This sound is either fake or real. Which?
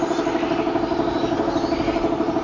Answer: real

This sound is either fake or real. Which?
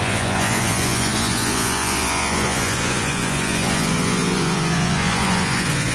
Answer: fake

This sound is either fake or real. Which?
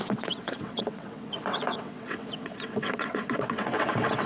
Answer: fake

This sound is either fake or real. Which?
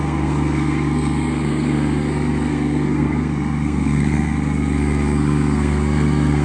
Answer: fake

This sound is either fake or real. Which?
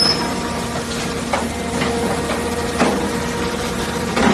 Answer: real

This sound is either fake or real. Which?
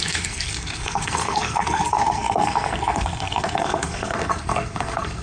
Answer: fake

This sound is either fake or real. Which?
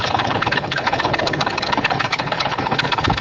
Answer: fake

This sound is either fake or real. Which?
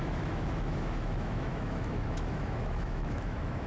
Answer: fake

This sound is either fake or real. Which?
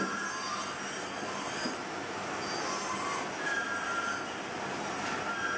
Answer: real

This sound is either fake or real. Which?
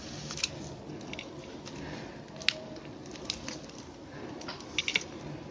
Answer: real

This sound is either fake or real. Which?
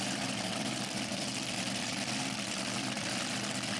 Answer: fake